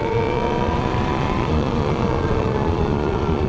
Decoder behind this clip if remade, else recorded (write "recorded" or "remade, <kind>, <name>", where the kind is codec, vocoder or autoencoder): remade, vocoder, Vocos